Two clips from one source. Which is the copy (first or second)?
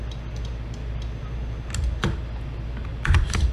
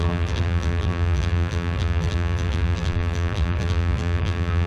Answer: second